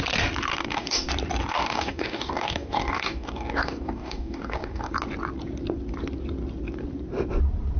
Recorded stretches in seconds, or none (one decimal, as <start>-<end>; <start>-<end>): 0.0-0.5; 1.1-1.5; 4.9-7.8